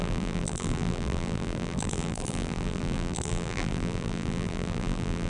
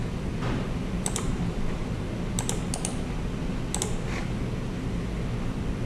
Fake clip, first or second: first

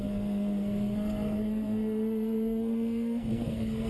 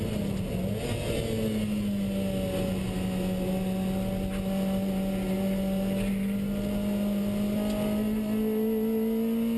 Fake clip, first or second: first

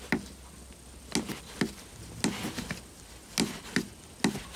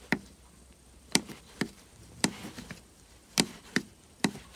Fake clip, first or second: second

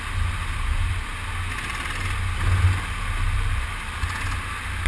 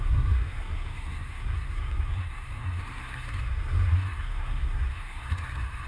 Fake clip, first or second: second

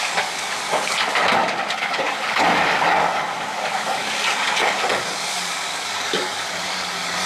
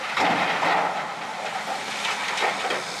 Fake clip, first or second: first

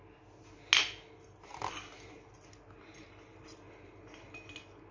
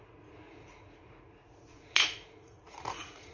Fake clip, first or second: second